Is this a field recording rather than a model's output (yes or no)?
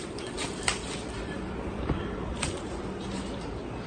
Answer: no